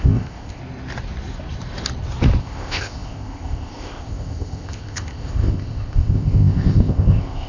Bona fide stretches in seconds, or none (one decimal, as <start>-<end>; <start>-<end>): 0.6-2.4